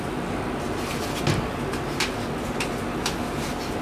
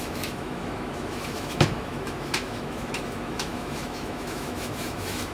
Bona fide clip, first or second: first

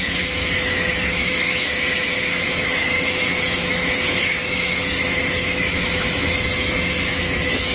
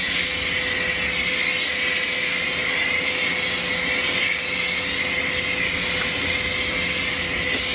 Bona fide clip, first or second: second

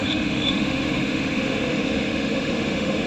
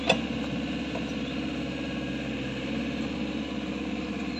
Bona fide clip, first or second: second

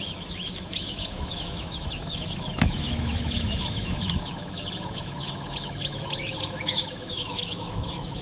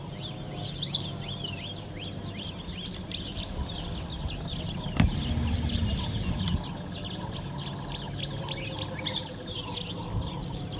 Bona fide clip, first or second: second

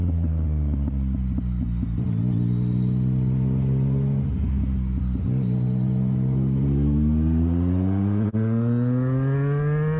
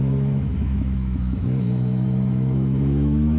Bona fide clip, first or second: first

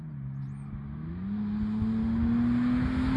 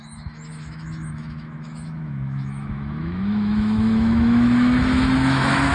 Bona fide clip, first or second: first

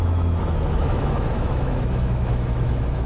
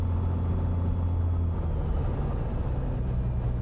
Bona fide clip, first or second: second